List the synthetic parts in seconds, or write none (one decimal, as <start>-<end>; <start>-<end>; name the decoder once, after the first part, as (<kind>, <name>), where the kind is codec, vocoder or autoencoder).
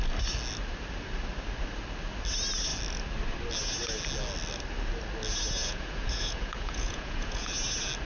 5.6-7.5 (vocoder, Vocos)